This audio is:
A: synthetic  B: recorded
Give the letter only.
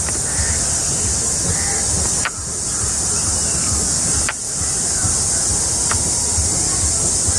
B